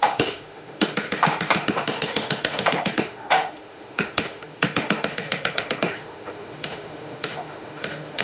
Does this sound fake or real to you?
fake